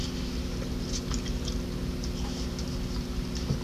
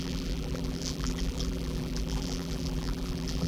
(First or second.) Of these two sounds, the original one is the first